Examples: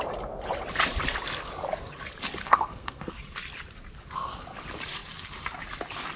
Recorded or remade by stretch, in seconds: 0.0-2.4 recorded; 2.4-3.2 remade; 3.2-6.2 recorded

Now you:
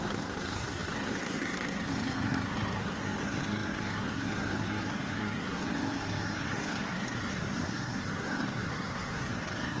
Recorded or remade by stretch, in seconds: 0.0-9.8 remade

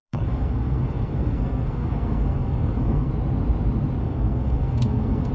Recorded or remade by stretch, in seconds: 0.0-3.1 remade; 3.1-4.0 recorded; 4.0-5.3 remade

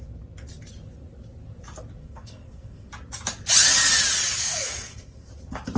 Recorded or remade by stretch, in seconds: 0.0-2.0 recorded; 2.0-2.9 remade; 2.9-4.4 recorded; 4.4-5.3 remade; 5.3-5.8 recorded

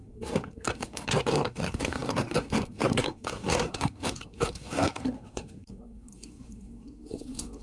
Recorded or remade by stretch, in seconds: 0.0-7.6 remade

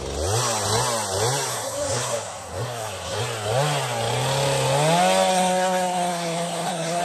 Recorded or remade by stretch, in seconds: 0.0-1.5 recorded; 1.5-3.2 remade; 3.2-5.3 recorded; 5.3-7.0 remade

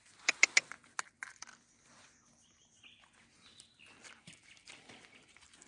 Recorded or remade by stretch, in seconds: 0.0-5.7 recorded

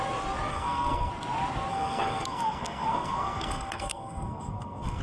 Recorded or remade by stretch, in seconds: 0.0-0.5 recorded; 0.5-1.1 remade; 1.1-1.7 recorded; 1.7-5.0 remade